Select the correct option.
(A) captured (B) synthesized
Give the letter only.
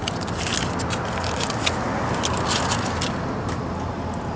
A